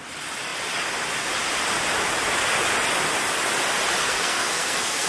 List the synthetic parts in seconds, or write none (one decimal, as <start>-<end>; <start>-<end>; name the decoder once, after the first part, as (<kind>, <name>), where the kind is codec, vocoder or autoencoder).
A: 4.0-5.1 (codec, SNAC)